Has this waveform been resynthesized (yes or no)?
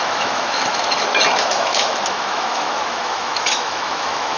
yes